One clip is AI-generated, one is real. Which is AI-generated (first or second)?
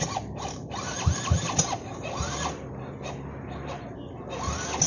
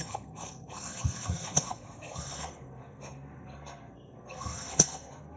second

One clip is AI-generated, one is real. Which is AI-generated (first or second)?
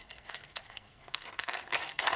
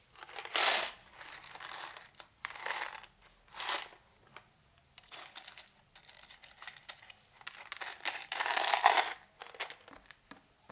first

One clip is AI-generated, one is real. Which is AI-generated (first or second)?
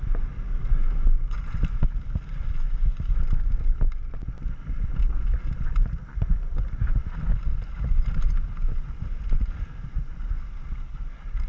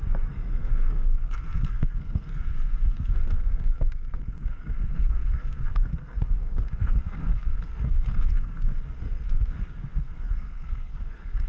second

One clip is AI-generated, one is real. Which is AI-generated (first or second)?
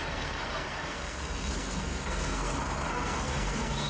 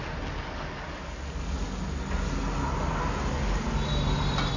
first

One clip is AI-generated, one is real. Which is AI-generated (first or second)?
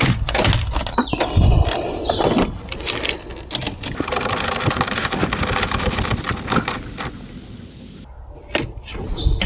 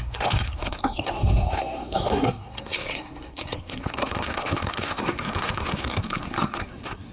second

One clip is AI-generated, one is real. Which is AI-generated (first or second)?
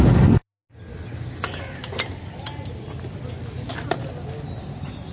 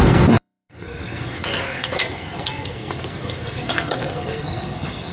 second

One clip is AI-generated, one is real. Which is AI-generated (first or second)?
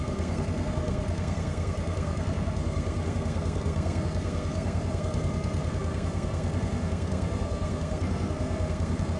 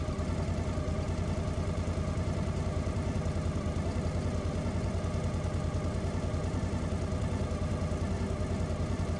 first